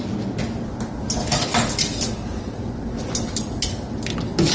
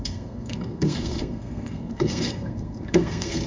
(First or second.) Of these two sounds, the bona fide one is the first